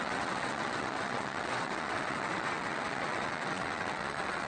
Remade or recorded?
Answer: remade